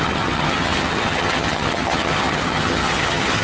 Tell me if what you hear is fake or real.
fake